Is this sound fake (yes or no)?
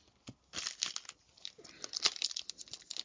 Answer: no